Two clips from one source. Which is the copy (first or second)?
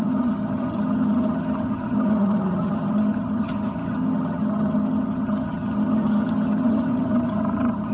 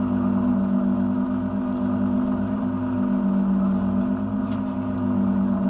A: first